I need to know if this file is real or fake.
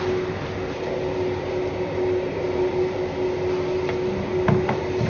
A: real